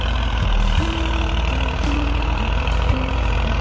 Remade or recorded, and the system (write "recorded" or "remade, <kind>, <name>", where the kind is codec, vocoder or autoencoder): remade, vocoder, BigVGAN v2